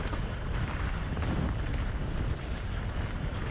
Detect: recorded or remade recorded